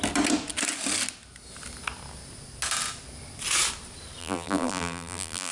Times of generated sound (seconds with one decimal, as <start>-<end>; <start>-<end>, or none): 4.2-5.5